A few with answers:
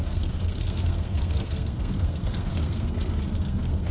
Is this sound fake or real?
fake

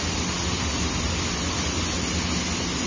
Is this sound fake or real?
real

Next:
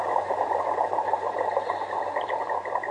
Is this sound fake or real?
fake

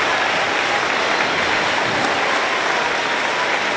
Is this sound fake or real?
real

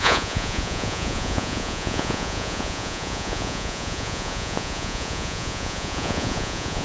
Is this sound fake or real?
fake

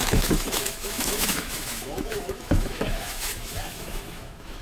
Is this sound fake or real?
fake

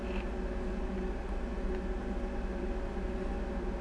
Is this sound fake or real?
real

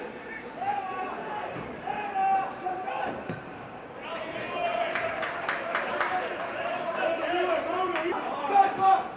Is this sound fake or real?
fake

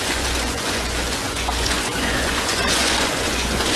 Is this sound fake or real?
fake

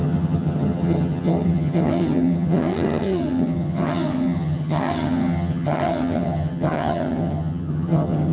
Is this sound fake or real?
fake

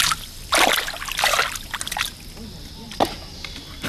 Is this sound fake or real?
real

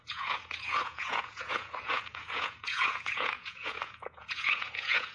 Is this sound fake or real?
fake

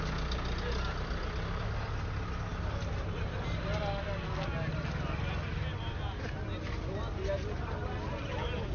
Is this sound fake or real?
real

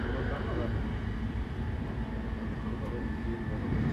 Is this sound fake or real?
fake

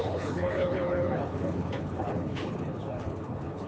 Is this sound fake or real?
fake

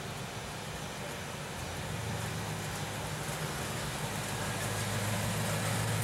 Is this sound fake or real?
real